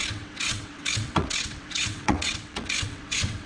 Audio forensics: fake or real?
fake